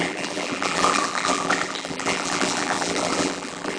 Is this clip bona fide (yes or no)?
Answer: no